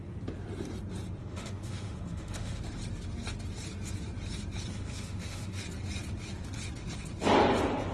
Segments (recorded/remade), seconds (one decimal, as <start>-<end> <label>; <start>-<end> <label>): 0.0-1.2 recorded; 1.2-2.6 remade; 2.6-4.7 recorded; 4.7-5.6 remade; 5.6-7.9 recorded